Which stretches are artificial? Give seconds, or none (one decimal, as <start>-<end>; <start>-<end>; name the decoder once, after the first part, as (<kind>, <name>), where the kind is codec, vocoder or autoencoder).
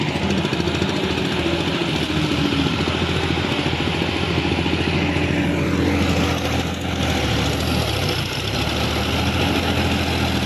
none